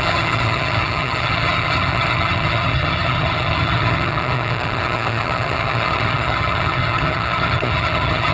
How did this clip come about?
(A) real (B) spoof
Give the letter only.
B